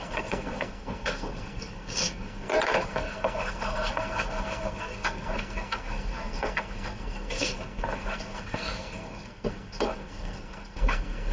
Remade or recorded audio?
remade